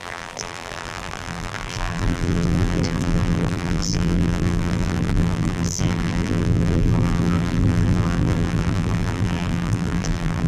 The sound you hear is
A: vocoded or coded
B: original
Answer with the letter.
A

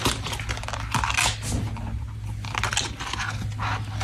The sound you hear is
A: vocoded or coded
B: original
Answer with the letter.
B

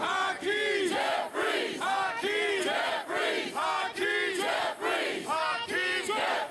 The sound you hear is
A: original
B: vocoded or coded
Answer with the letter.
A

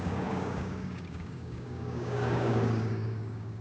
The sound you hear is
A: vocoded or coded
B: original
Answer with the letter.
A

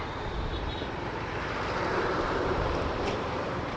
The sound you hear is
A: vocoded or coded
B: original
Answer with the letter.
A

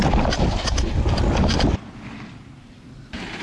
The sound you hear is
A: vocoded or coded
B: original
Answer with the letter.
A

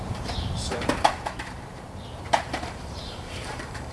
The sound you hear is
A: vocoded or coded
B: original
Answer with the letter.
A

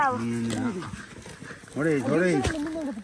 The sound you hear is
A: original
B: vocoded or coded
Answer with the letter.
A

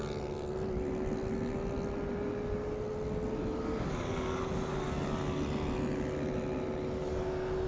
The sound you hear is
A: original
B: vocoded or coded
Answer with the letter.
A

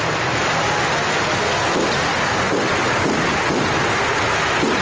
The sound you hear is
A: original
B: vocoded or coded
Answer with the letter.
A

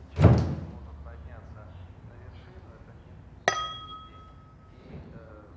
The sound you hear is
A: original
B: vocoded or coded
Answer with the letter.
A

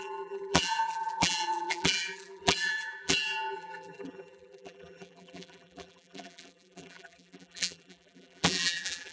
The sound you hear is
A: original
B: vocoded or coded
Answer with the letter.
B